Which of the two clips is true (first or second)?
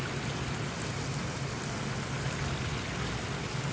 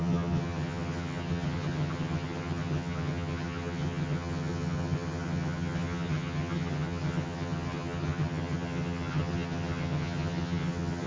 first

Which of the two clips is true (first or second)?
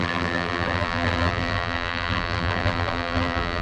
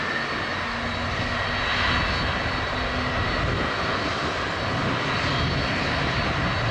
second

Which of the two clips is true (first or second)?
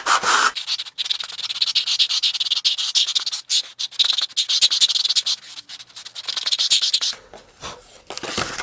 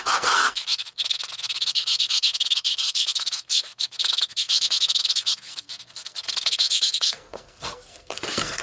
first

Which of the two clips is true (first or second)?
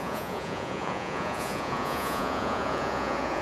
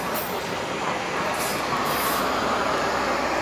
second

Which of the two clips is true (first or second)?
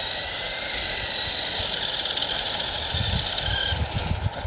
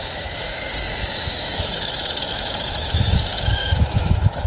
first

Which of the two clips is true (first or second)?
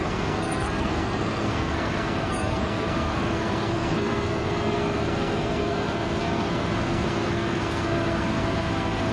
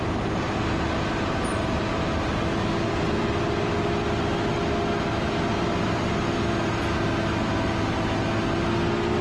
second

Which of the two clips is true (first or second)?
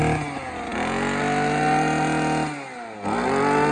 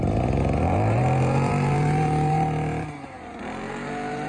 first